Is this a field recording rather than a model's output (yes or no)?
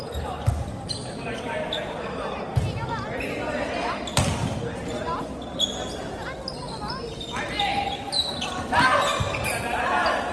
yes